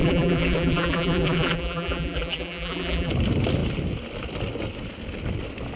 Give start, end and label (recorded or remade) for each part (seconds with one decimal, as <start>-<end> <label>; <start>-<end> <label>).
0.0-3.1 remade; 3.1-5.8 recorded